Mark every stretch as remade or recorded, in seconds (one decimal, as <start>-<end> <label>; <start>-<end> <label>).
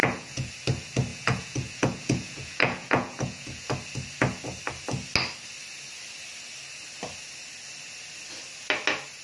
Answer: 0.0-0.5 remade; 0.5-1.1 recorded; 1.1-3.7 remade; 3.7-9.2 recorded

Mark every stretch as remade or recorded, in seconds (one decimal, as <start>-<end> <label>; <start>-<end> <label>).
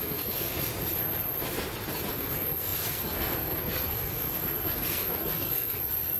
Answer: 0.0-0.7 remade; 0.7-2.1 recorded; 2.1-6.2 remade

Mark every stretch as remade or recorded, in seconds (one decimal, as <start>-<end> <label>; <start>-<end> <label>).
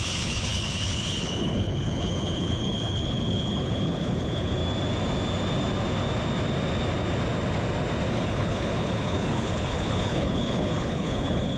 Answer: 0.0-4.6 remade; 4.6-8.1 recorded; 8.1-11.6 remade